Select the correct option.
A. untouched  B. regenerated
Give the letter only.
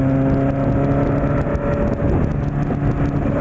A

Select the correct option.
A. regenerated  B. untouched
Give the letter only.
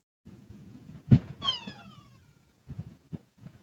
A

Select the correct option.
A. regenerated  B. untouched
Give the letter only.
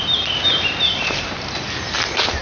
B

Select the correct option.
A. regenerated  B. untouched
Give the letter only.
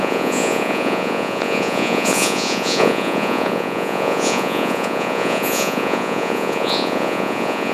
A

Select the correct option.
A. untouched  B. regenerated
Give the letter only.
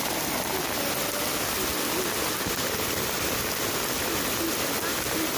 A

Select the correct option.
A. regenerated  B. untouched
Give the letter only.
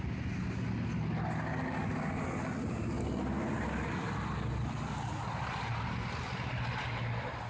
B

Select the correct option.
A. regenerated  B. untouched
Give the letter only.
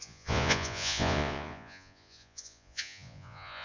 A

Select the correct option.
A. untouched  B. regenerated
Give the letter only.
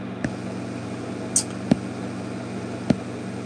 A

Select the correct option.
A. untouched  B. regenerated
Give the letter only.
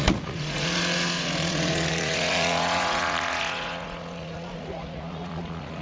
B